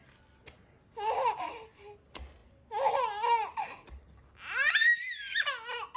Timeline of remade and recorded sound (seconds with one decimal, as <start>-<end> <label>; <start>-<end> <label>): 0.0-6.0 recorded